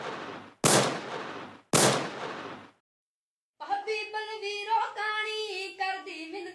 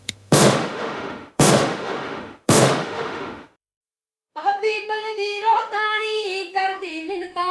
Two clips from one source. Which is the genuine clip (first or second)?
first